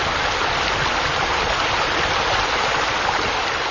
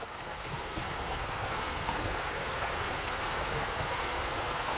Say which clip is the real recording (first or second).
first